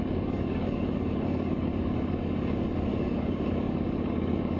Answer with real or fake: fake